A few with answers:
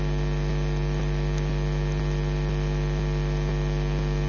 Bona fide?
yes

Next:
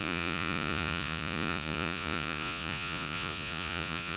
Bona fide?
no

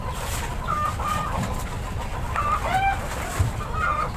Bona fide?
yes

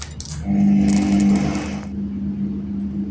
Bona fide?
yes